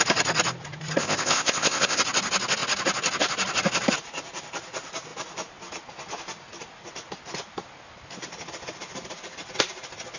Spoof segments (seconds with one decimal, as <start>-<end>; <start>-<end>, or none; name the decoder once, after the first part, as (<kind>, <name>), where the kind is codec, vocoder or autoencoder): 1.0-2.0 (codec, ZipCodec)